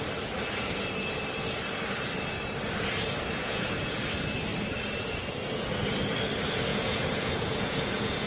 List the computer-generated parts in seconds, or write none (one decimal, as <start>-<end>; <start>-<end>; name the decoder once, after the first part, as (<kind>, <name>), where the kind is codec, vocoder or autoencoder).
3.4-4.1 (vocoder, Vocos); 6.7-8.3